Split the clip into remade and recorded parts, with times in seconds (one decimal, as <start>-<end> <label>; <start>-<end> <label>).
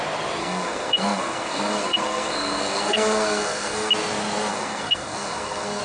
0.0-0.4 recorded; 0.4-3.9 remade; 3.9-4.5 recorded; 4.5-5.8 remade